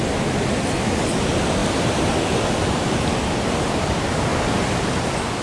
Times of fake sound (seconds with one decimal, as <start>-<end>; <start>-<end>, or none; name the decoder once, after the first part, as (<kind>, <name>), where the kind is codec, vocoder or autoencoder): none